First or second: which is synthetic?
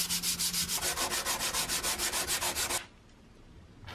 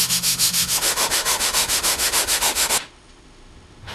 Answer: second